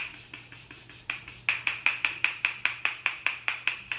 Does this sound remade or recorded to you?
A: recorded